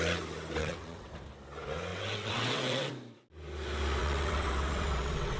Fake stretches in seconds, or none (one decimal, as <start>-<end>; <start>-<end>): 0.6-1.1; 1.9-2.9; 4.0-5.4